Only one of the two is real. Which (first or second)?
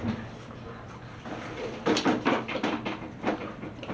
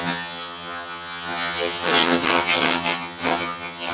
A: first